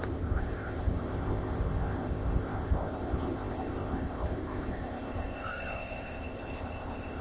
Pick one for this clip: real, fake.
fake